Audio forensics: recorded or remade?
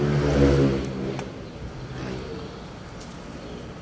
recorded